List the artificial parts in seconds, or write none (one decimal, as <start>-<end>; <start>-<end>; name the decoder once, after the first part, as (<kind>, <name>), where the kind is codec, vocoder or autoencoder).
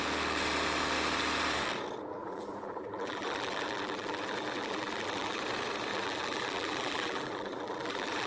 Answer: 2.1-5.4 (vocoder, BigVGAN v2); 5.9-8.3